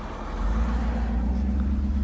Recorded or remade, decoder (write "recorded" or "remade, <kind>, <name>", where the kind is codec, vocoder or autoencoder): recorded